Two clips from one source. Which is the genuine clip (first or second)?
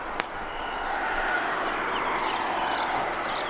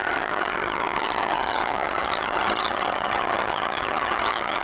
first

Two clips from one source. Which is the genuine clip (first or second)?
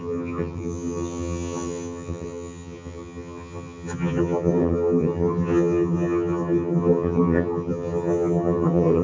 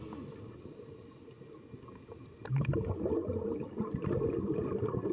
second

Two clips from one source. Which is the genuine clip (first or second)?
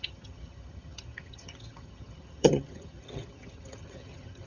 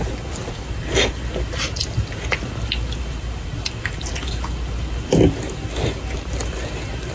second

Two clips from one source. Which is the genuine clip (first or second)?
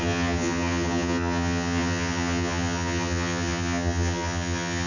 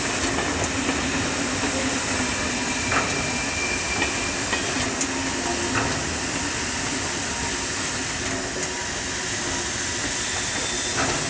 second